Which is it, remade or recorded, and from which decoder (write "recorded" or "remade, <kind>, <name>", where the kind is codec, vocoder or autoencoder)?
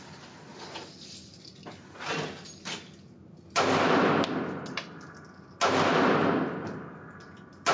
recorded